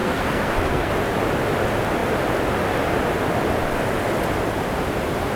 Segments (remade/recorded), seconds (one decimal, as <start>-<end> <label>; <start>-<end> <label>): 0.0-0.9 remade; 0.9-5.4 recorded